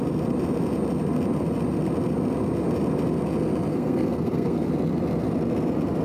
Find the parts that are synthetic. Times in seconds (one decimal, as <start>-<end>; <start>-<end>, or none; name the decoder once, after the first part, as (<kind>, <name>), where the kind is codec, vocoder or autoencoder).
3.7-4.7 (codec, SNAC)